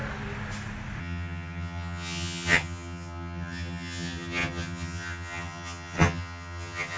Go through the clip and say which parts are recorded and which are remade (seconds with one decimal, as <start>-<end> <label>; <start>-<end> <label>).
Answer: 0.0-1.0 recorded; 1.0-7.0 remade